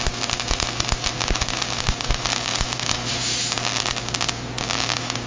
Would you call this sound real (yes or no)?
yes